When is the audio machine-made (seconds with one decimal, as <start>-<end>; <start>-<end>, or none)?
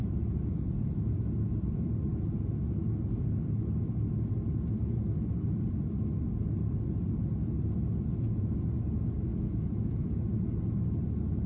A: 0.0-1.8; 8.1-10.3